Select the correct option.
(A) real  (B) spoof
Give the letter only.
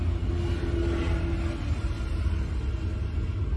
A